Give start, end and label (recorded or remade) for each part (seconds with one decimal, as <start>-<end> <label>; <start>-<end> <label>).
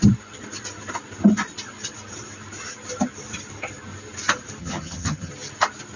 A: 0.0-4.6 recorded; 4.6-5.3 remade; 5.3-6.0 recorded